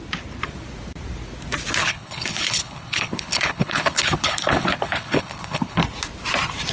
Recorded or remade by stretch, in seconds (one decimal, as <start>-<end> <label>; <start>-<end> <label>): 0.0-1.8 recorded; 1.8-5.8 remade; 5.8-6.7 recorded